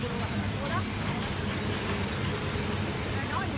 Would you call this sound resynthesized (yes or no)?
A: yes